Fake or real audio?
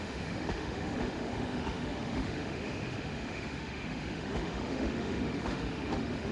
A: fake